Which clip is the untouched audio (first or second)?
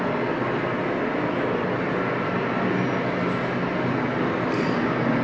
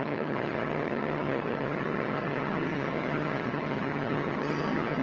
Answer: first